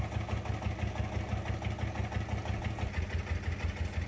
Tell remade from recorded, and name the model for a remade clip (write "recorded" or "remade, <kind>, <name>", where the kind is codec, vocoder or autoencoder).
recorded